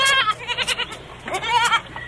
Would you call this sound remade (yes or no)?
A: no